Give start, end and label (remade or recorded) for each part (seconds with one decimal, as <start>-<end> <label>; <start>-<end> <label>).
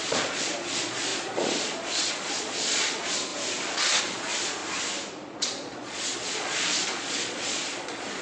0.0-3.3 remade; 3.3-4.0 recorded; 4.0-4.6 remade; 4.6-5.3 recorded; 5.3-8.2 remade